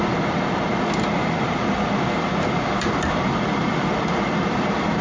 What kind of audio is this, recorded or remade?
remade